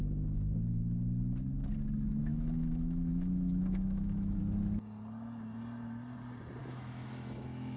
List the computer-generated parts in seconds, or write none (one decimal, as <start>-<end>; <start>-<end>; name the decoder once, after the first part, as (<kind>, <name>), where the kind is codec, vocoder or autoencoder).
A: 2.3-4.4 (autoencoder, DAC-VAE); 6.6-7.8